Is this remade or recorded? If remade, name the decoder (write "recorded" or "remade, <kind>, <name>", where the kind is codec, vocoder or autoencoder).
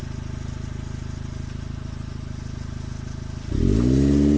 recorded